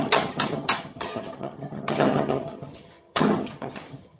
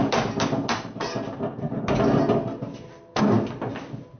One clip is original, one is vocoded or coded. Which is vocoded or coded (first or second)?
first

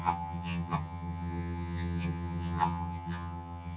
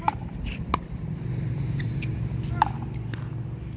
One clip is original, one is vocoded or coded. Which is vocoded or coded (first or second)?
first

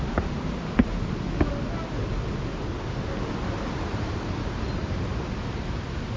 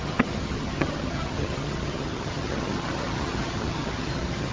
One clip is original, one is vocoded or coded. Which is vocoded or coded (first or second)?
second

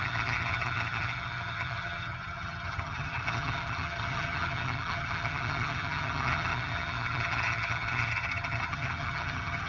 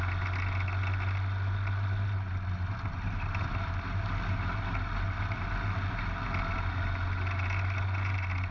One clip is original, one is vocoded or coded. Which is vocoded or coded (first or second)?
first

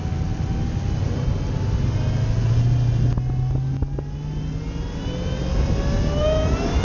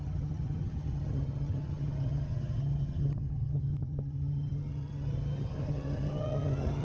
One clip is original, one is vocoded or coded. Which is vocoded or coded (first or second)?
second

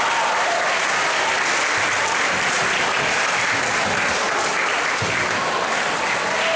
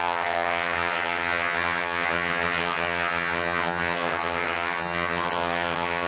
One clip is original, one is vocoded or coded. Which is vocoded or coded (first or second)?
second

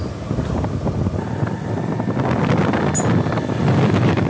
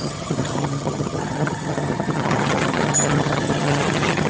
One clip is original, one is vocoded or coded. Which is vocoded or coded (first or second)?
second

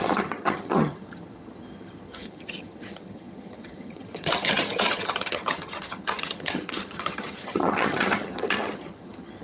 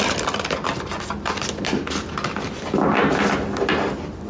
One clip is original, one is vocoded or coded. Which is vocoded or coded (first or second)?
first